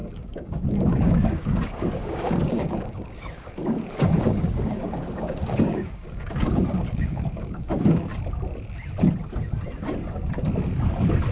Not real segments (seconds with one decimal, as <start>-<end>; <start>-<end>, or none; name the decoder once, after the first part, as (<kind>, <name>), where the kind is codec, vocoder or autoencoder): 0.0-8.1 (codec, DAC)